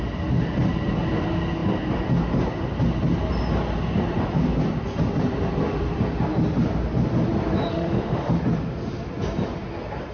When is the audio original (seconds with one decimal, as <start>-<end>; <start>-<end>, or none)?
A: 0.0-7.7; 8.3-10.1